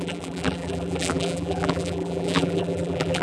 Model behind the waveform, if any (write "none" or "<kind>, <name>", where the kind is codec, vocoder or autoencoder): vocoder, BigVGAN v2